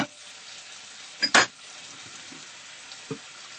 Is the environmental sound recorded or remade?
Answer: recorded